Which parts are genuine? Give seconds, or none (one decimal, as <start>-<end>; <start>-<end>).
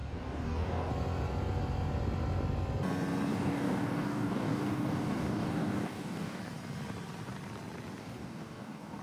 0.9-3.3; 6.4-8.0